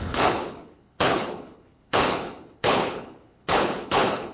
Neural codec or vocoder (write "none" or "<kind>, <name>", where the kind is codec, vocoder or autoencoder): codec, HILCodec